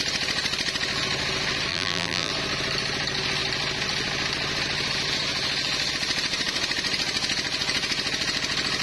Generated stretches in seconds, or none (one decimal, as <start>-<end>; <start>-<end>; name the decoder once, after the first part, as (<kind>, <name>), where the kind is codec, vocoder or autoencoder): 1.7-2.3 (vocoder, BigVGAN v2)